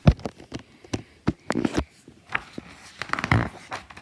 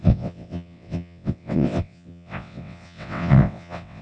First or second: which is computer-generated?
second